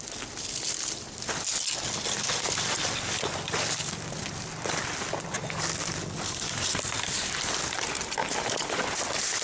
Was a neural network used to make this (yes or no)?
no